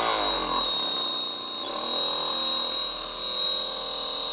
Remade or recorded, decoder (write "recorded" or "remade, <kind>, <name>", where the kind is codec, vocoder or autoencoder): recorded